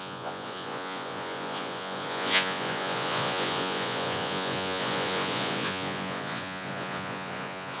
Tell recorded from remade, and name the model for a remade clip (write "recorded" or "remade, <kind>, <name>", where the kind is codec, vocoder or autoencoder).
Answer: remade, vocoder, Vocos